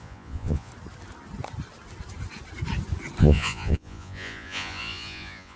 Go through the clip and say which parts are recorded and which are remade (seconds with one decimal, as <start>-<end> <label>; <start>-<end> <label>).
0.0-0.7 remade; 0.7-3.2 recorded; 3.2-5.6 remade